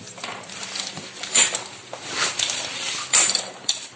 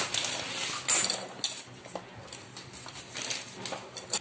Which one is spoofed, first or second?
first